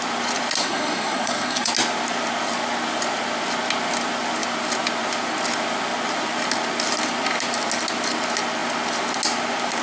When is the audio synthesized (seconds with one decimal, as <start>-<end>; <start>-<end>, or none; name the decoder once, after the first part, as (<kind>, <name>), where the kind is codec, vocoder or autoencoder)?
0.6-1.7 (codec, SNAC)